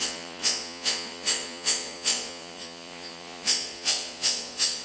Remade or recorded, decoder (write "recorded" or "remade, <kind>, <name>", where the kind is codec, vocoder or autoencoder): remade, vocoder, Vocos